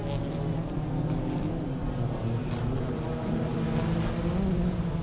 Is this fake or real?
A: real